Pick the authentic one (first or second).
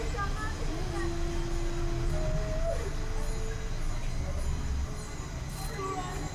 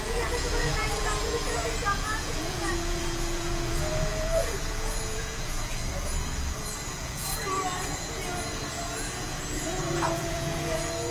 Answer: first